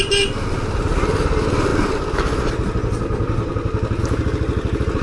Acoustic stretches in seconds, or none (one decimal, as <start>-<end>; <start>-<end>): 0.0-5.0